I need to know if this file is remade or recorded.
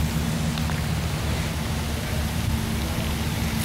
recorded